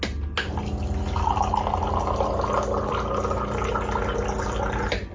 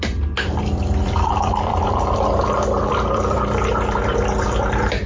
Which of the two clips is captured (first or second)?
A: first